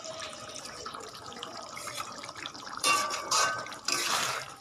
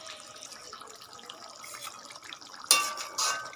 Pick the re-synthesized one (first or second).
first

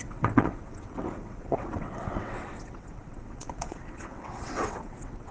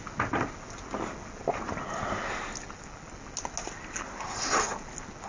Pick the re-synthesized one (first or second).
first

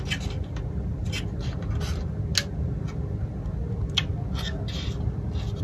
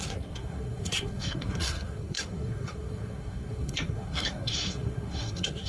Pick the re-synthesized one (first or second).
second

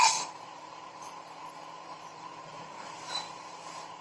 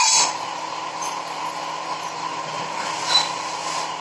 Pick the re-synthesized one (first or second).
first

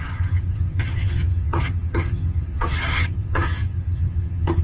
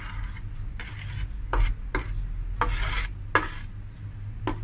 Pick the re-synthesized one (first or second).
first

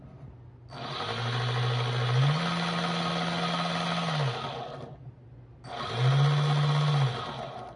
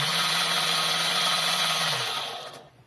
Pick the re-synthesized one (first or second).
second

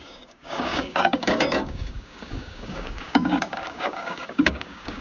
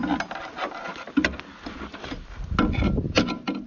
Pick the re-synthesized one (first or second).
first